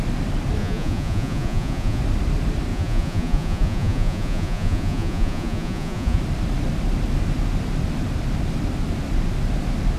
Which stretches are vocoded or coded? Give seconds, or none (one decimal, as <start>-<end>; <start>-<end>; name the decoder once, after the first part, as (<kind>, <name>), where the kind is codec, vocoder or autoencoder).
0.6-2.0 (vocoder, Vocos); 2.7-6.2